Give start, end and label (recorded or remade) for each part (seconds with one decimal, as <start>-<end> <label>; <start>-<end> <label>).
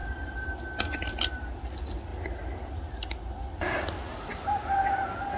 0.0-2.1 recorded; 2.1-5.4 remade